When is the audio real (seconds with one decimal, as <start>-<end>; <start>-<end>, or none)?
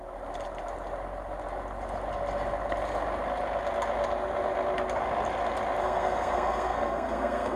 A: 0.0-5.8